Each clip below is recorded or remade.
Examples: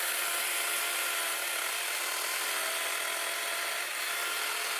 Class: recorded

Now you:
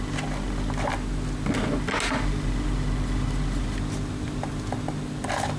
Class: recorded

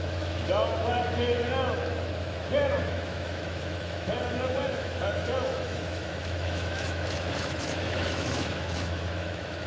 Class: remade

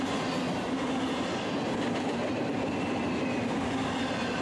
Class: recorded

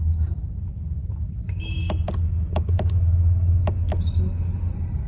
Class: recorded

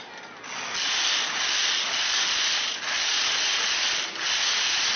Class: recorded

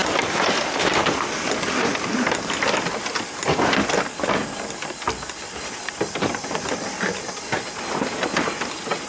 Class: recorded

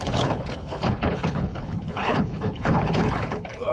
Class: remade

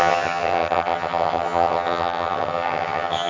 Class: remade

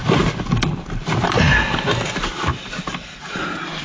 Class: recorded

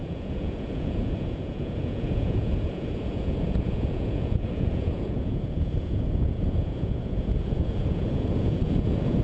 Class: remade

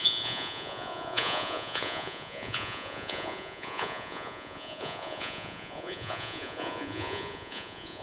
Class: remade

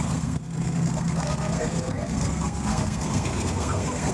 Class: remade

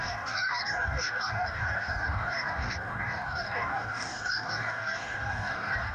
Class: remade